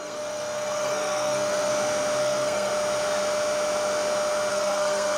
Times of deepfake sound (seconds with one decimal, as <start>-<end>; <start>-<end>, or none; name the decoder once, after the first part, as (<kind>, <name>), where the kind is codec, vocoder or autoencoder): 0.0-1.7 (codec, SNAC); 2.2-2.7; 4.5-5.2